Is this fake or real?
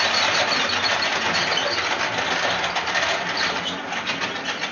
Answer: real